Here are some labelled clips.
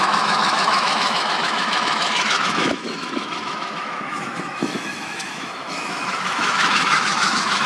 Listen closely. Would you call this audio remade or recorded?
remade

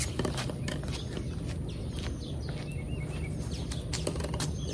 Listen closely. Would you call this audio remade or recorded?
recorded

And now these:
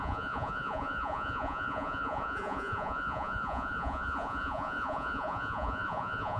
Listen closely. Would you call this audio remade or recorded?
remade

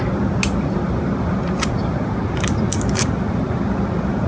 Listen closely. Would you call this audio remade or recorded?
recorded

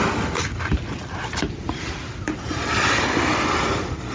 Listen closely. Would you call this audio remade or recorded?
recorded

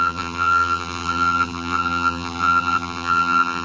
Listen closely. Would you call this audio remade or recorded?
remade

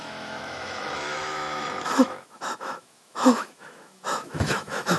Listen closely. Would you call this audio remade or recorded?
remade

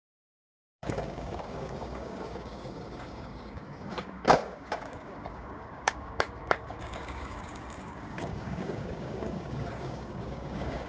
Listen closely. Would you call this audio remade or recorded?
remade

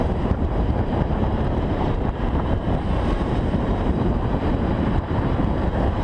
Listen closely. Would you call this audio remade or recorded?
remade